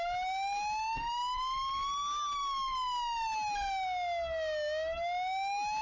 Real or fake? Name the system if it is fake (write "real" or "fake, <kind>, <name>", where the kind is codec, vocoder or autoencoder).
real